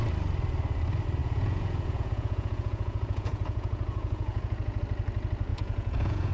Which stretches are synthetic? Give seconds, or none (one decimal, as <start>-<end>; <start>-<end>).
1.2-4.8; 5.5-6.3